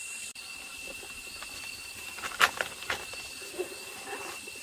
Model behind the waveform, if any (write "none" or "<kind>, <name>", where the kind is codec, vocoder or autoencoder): vocoder, BigVGAN v2